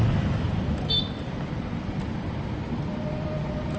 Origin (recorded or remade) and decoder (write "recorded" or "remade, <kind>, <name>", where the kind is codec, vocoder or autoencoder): recorded